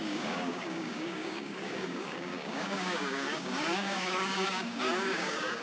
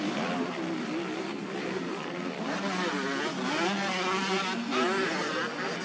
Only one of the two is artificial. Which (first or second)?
first